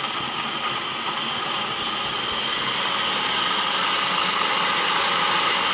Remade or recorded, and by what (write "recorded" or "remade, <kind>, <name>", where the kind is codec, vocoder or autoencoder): recorded